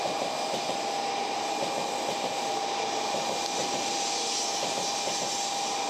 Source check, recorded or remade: recorded